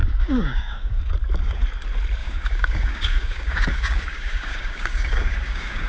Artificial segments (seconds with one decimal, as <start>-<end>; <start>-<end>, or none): 0.0-1.0; 2.2-5.9